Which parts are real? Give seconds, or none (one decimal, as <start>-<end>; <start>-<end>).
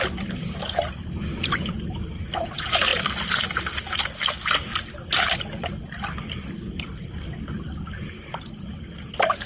0.0-9.5